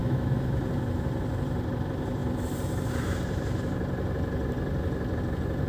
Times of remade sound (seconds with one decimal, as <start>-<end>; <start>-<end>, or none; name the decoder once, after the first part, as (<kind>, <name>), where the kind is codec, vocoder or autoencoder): 0.0-0.6 (autoencoder, DAC-VAE)